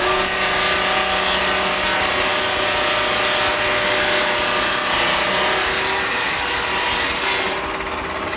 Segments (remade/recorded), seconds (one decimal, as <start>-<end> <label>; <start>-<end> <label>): 0.0-8.4 recorded